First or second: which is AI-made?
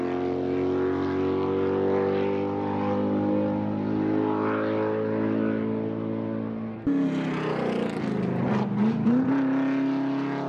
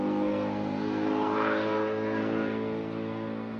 second